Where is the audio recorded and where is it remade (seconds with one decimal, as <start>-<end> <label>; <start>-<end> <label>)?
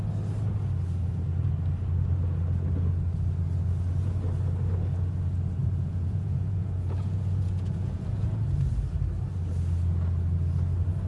0.0-5.6 recorded; 5.6-8.5 remade; 8.5-11.1 recorded